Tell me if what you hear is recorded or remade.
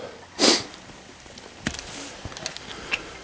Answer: recorded